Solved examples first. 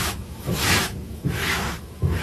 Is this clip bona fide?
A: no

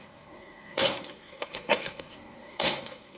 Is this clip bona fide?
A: no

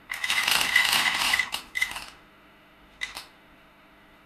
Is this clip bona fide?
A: no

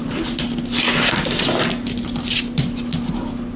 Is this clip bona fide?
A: yes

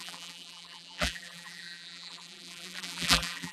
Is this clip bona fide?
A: no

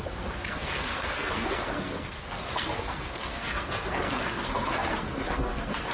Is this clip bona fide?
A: no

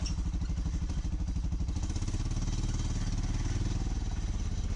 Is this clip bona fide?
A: yes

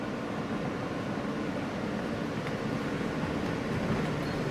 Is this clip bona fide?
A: yes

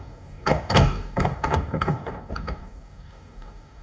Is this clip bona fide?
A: no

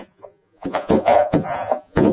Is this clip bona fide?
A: no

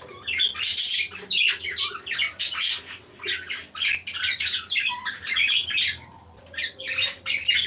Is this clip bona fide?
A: yes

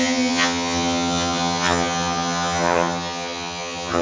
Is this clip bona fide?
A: no